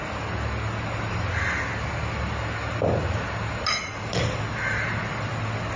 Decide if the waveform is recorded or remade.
recorded